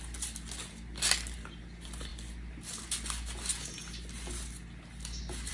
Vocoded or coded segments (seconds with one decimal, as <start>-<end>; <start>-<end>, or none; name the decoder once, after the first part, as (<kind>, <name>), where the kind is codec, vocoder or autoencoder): none